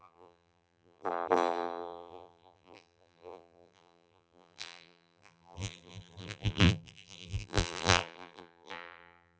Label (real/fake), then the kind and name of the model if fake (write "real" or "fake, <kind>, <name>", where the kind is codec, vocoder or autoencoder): fake, vocoder, BigVGAN v2